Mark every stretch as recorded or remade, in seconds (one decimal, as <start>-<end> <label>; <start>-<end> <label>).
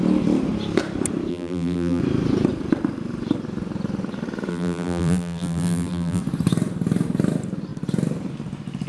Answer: 0.0-1.3 recorded; 1.3-2.0 remade; 2.0-4.5 recorded; 4.5-6.2 remade; 6.2-8.9 recorded